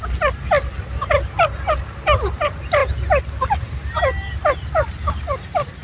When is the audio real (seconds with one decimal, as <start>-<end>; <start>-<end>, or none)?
0.0-5.8